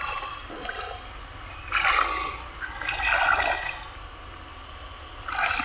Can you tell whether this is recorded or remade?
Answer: recorded